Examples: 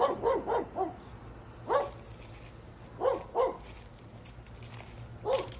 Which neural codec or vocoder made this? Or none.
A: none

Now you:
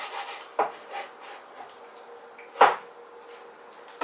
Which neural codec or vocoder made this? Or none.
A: none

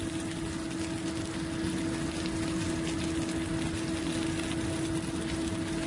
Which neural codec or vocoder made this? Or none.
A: none